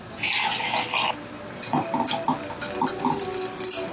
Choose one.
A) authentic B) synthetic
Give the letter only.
A